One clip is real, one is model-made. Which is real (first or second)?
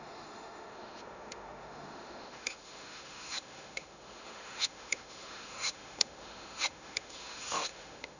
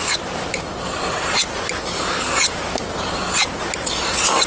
second